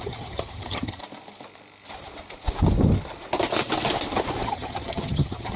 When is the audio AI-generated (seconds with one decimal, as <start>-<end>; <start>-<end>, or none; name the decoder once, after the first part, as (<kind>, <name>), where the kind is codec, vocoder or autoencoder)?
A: 0.0-1.0 (vocoder, HiFi-GAN); 4.4-5.6